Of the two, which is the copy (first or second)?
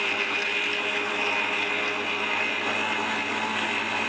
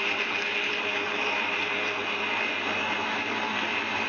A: second